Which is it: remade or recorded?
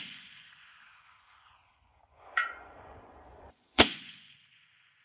remade